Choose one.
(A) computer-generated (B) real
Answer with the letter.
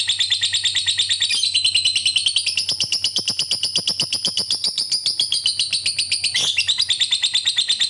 B